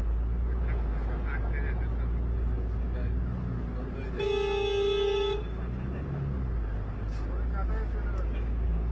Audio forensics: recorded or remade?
recorded